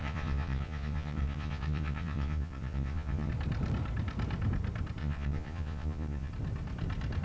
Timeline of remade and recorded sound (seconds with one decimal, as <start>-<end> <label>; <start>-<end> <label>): 0.0-3.3 remade; 3.3-5.0 recorded; 5.0-6.3 remade; 6.3-7.2 recorded